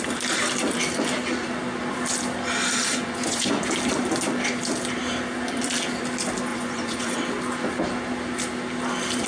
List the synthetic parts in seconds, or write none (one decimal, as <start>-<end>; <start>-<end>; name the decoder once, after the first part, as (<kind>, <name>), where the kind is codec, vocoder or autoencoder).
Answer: 2.9-3.6 (vocoder, Vocos); 6.5-7.2